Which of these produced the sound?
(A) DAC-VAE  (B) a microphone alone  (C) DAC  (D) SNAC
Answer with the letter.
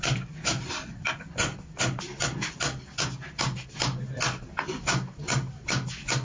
B